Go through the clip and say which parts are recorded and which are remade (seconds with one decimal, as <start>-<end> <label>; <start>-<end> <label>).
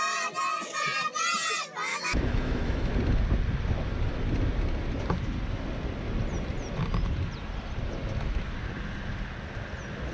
0.0-1.9 recorded; 1.9-2.9 remade; 2.9-10.1 recorded